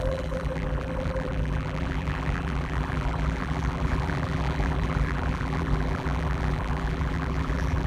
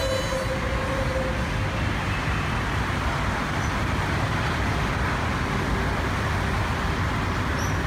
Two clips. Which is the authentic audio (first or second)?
second